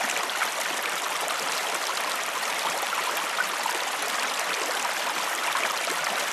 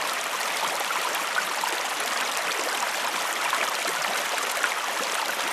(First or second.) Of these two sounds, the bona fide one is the first